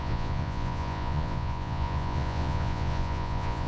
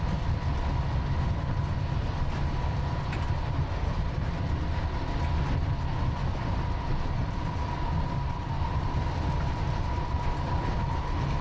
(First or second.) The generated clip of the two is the first